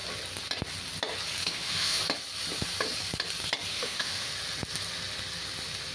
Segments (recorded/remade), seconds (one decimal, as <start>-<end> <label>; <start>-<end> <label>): 0.0-1.4 recorded; 1.4-2.0 remade; 2.0-3.7 recorded; 3.7-4.3 remade; 4.3-5.9 recorded

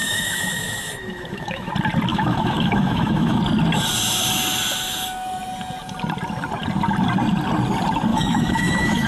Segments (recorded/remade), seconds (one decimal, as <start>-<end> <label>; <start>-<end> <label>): 0.0-1.7 remade; 1.7-2.1 recorded; 2.1-3.4 remade; 3.4-8.1 recorded; 8.1-9.1 remade